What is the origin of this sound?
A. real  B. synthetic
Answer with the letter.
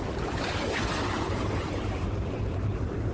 B